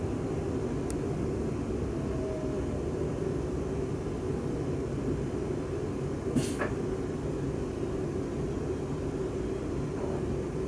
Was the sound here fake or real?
real